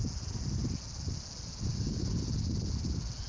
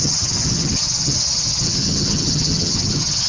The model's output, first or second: second